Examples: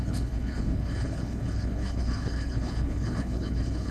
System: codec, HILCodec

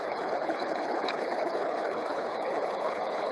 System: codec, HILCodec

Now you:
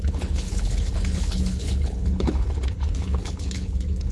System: codec, HILCodec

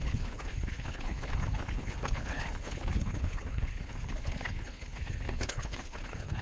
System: codec, HILCodec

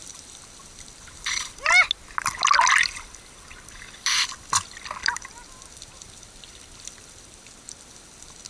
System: none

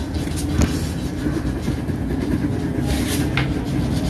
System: none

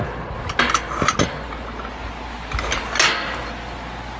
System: none